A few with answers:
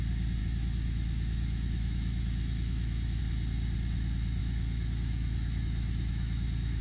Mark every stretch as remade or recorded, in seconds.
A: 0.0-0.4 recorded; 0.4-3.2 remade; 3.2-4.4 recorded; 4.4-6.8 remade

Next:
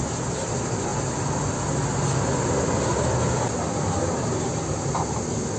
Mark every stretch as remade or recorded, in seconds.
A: 0.0-5.6 recorded

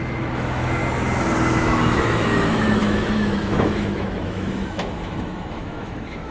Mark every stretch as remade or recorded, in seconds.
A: 0.0-0.8 remade; 0.8-1.6 recorded; 1.6-6.3 remade

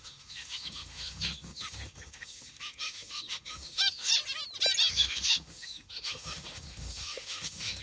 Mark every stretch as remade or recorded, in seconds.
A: 0.0-4.1 remade; 4.1-4.9 recorded; 4.9-7.8 remade

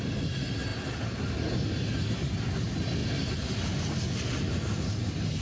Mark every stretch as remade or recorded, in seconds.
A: 0.0-5.4 recorded

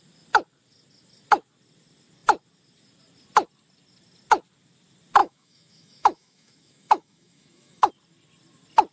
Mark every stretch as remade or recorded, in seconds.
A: 0.0-5.2 recorded; 5.2-7.9 remade; 7.9-8.9 recorded

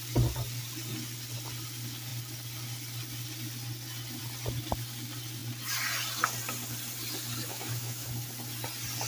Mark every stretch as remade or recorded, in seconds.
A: 0.0-7.5 recorded; 7.5-8.1 remade; 8.1-9.1 recorded